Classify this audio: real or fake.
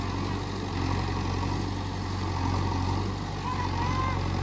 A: real